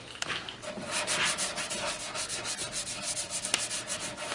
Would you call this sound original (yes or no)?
yes